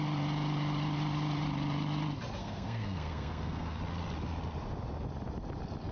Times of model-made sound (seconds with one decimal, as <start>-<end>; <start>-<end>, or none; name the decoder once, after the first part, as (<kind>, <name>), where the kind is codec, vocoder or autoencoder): 2.4-3.8 (codec, SNAC)